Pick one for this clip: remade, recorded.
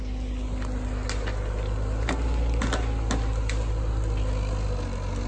recorded